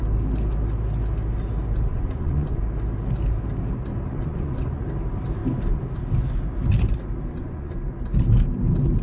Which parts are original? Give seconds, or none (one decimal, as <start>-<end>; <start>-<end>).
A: 0.0-1.9; 2.6-3.9; 4.8-7.3; 7.8-9.0